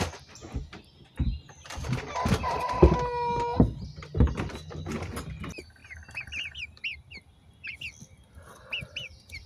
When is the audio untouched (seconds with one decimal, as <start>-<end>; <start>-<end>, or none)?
0.0-9.5